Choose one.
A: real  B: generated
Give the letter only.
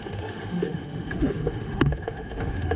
B